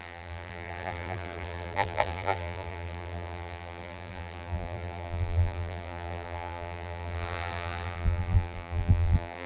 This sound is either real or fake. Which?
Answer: fake